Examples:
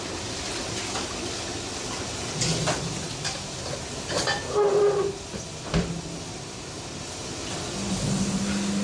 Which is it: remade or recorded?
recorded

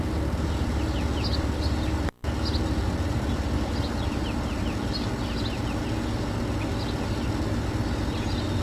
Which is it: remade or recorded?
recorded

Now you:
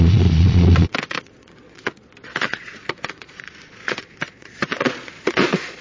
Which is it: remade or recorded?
remade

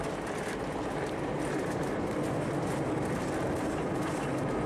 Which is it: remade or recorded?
recorded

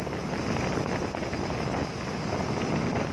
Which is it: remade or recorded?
recorded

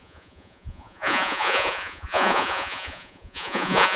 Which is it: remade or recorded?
remade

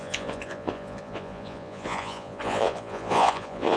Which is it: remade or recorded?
remade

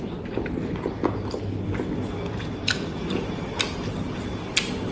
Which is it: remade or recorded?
recorded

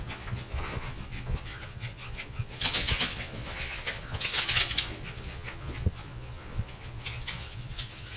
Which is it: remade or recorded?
remade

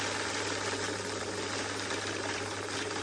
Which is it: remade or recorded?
recorded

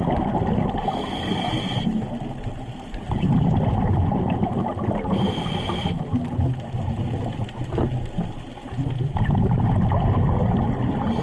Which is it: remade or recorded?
recorded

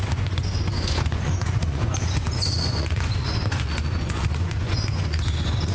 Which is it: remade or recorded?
remade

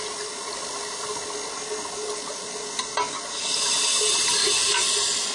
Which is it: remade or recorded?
recorded